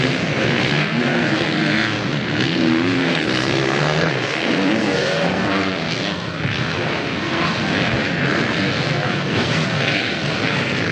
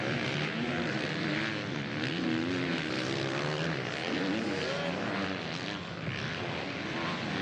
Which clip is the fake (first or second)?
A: first